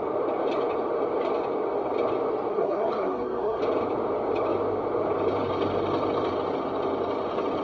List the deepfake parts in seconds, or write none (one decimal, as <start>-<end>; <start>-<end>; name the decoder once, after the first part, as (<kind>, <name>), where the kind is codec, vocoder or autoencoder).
2.5-3.6 (codec, SNAC)